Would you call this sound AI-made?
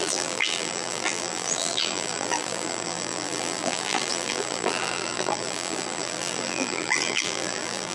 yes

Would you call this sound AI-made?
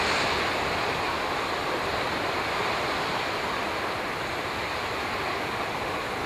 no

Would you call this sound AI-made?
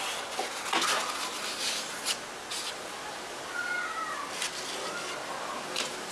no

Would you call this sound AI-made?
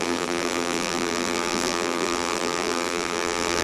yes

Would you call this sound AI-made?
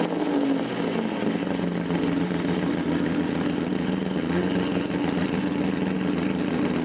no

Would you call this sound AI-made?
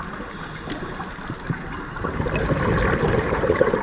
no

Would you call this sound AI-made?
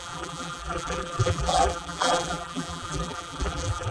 yes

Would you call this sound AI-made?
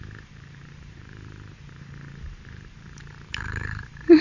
yes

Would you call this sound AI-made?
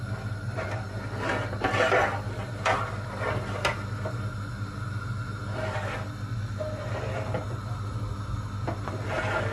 no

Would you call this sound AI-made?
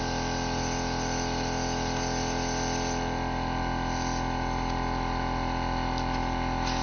no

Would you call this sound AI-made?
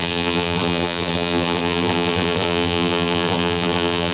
yes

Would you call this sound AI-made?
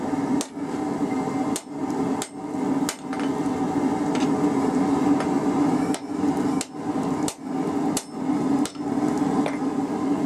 no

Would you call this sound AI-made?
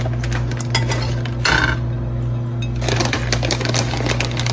no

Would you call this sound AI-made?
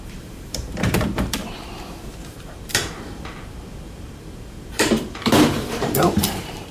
yes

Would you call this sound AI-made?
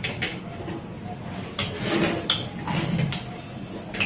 no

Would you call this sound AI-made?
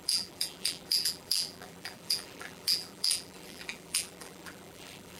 yes